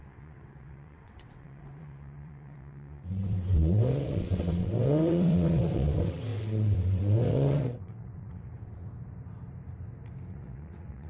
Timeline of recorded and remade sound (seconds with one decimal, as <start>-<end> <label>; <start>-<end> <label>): 0.0-8.9 remade; 8.9-10.3 recorded; 10.3-11.1 remade